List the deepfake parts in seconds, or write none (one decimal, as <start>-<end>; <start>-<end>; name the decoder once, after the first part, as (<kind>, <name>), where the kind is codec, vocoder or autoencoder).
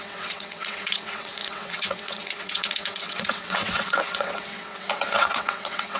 0.0-6.0 (vocoder, WaveNeXt)